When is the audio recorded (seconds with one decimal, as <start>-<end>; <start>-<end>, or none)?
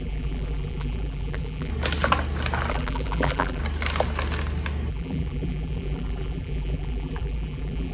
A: 1.7-2.7; 3.6-4.9